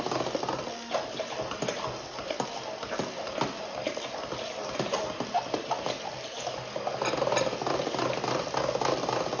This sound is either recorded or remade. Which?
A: recorded